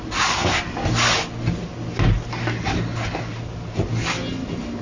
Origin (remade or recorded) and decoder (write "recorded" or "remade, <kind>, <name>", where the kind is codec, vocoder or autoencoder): recorded